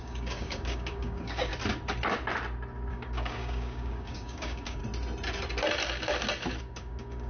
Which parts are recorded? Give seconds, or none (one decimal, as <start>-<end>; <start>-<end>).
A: 1.5-2.9; 4.8-6.6